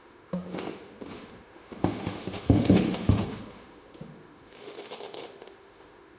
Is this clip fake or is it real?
fake